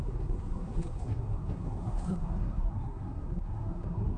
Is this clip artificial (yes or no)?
yes